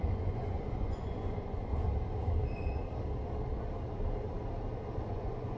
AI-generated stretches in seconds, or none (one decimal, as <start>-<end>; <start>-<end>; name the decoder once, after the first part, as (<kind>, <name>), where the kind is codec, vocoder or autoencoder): 0.0-1.7 (vocoder, Vocos); 5.1-5.6